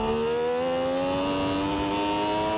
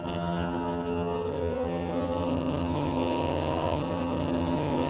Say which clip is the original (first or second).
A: first